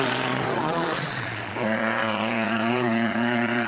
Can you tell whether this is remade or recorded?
remade